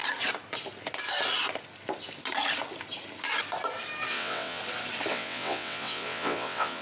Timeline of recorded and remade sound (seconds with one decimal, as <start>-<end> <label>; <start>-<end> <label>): 0.0-4.1 recorded; 4.1-4.6 remade; 4.6-5.1 recorded; 5.1-6.8 remade